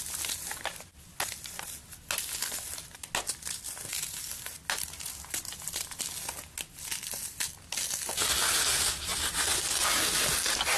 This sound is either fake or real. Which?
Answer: real